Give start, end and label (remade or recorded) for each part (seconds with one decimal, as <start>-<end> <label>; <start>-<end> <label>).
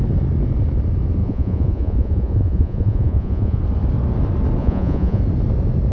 0.0-1.2 recorded; 1.2-3.6 remade; 3.6-4.6 recorded; 4.6-5.2 remade; 5.2-5.9 recorded